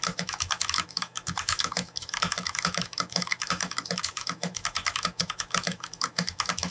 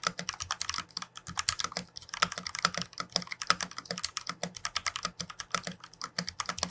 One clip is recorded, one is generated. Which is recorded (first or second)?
second